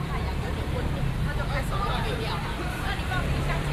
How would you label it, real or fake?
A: fake